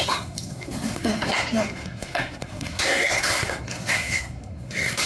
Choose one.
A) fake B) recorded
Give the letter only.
A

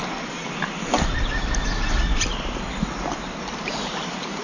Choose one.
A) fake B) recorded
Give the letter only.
B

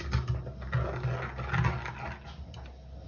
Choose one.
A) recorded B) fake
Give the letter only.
A